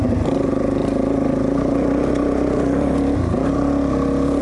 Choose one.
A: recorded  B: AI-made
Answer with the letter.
A